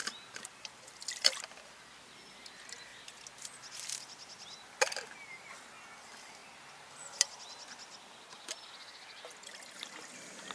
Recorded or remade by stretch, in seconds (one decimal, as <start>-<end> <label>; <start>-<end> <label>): 0.0-1.4 remade; 1.4-6.4 recorded; 6.4-6.9 remade; 6.9-10.5 recorded